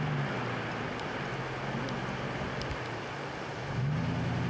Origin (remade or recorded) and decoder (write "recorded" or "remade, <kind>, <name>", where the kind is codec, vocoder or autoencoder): recorded